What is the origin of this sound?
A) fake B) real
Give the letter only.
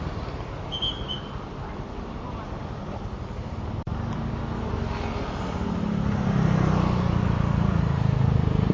B